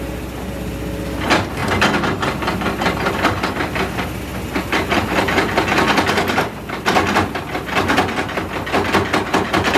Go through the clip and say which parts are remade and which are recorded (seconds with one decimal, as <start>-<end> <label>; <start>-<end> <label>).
0.0-9.8 recorded